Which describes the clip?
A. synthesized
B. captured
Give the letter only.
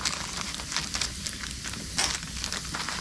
B